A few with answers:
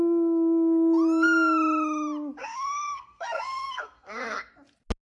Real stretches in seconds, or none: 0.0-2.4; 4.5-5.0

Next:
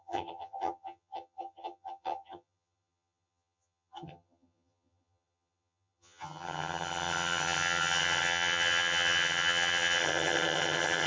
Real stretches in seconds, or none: none

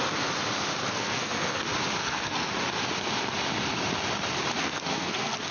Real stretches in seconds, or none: 0.0-0.9; 1.6-2.0; 2.5-4.6

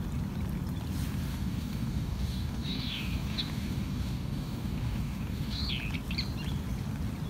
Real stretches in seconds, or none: 0.0-1.3; 5.7-7.3

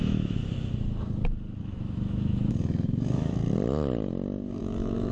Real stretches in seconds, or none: 0.4-1.6; 3.4-4.6